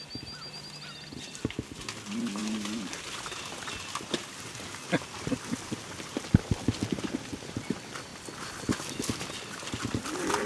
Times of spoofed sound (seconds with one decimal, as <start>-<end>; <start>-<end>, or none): none